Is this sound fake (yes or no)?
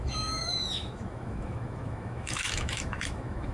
yes